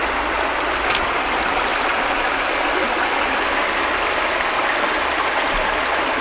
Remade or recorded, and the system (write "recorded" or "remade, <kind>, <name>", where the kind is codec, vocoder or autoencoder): recorded